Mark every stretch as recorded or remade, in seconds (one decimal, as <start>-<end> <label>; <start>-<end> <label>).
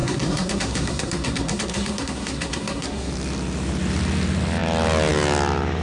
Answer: 0.0-3.1 remade; 3.1-5.8 recorded